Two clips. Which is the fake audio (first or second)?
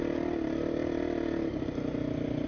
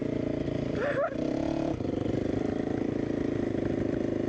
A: second